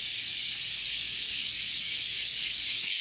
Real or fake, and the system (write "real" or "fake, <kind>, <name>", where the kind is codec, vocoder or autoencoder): fake, codec, DAC